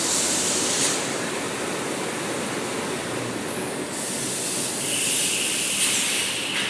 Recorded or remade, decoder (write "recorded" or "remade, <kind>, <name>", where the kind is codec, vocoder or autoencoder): recorded